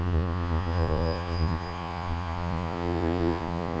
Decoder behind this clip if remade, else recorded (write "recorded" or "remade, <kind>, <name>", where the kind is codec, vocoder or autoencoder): remade, vocoder, Vocos